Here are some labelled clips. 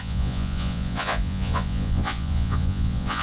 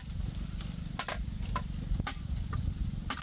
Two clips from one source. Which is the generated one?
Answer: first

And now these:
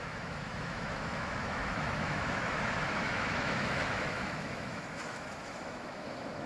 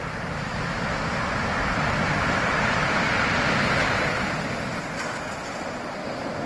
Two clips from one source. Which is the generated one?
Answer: first